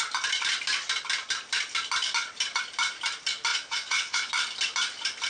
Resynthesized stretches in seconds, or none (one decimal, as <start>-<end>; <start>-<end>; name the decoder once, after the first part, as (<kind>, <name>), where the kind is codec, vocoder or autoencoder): 3.5-4.3 (vocoder, Vocos)